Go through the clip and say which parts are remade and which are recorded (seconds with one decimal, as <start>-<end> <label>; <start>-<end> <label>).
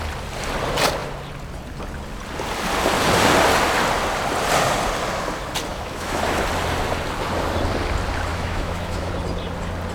0.0-5.7 recorded; 5.7-6.4 remade; 6.4-8.3 recorded; 8.3-9.1 remade; 9.1-9.9 recorded